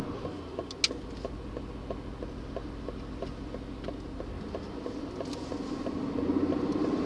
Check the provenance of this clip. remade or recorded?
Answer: recorded